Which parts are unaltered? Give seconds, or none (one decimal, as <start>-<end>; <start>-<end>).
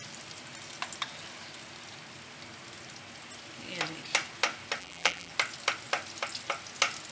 0.0-4.8; 5.3-7.1